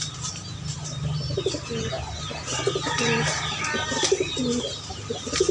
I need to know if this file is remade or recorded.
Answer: recorded